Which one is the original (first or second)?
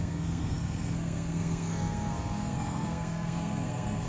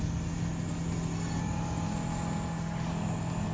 second